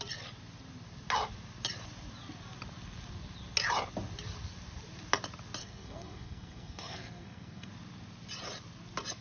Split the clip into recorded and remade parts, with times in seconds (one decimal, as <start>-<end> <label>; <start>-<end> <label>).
0.0-5.6 recorded; 5.6-7.7 remade; 7.7-9.2 recorded